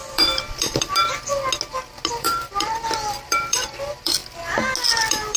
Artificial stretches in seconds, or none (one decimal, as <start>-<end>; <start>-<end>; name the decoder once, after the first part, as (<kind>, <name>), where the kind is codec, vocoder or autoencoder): 0.0-1.3 (vocoder, BigVGAN v2); 2.1-4.2; 5.0-5.4